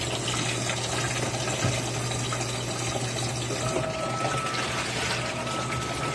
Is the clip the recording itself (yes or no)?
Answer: yes